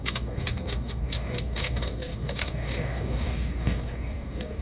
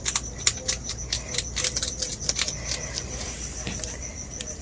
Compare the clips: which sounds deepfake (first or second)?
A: first